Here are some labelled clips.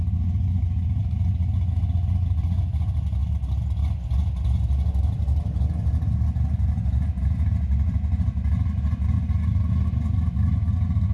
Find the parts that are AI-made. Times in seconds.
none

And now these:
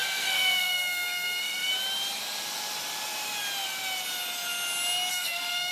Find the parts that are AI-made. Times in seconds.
0.0-1.7 (codec, SNAC); 5.1-5.7

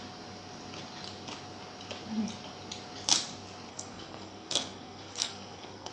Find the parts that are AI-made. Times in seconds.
3.7-5.9 (codec, SNAC)

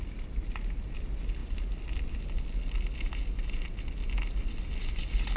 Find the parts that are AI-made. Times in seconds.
none

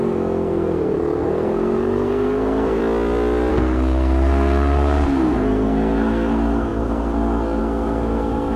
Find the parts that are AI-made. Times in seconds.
0.0-2.8 (codec, SNAC); 3.5-8.6